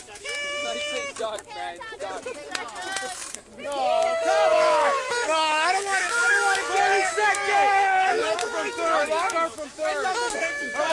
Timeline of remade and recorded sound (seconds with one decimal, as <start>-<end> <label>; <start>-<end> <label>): 0.0-0.6 remade; 0.6-4.5 recorded; 4.5-10.9 remade